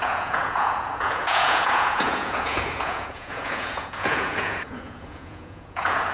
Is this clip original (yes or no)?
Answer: no